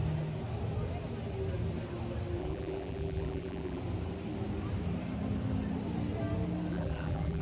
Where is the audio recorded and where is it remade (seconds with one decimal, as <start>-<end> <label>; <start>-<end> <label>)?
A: 0.0-2.4 recorded; 2.4-3.8 remade; 3.8-6.7 recorded; 6.7-7.4 remade